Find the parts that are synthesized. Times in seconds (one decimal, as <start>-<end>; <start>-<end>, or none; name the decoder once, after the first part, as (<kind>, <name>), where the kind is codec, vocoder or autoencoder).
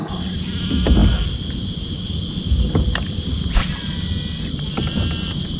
none